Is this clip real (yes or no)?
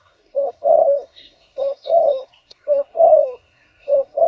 no